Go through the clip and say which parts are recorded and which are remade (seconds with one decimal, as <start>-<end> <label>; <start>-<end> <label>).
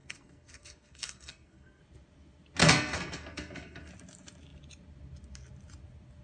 0.0-1.8 remade; 1.8-2.6 recorded; 2.6-3.9 remade; 3.9-6.2 recorded